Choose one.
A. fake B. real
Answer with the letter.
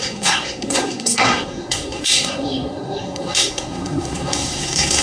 A